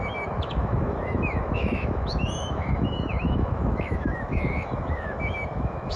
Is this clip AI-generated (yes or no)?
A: yes